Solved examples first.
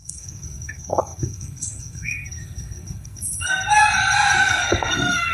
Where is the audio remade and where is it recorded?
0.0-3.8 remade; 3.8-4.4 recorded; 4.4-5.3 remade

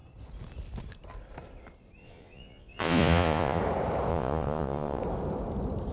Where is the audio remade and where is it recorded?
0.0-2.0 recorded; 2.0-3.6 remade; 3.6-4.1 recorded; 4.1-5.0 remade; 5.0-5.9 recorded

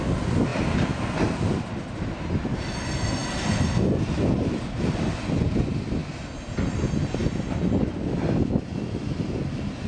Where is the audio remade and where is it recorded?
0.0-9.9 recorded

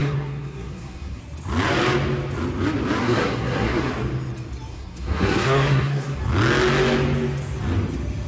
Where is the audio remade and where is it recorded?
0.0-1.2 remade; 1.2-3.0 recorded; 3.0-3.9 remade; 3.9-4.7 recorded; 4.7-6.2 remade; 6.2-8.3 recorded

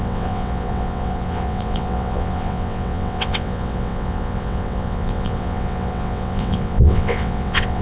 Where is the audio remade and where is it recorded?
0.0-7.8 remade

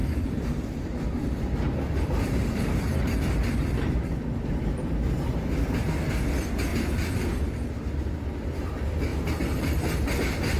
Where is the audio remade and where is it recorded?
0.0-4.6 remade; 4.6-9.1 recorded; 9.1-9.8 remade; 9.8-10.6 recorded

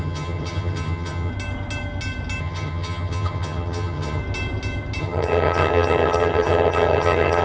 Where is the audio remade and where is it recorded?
0.0-1.3 remade; 1.3-2.4 recorded; 2.4-4.2 remade; 4.2-5.0 recorded; 5.0-7.4 remade